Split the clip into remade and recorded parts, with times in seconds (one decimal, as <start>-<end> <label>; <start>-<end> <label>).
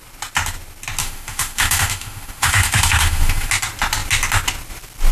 0.0-1.0 recorded; 1.0-3.5 remade; 3.5-5.1 recorded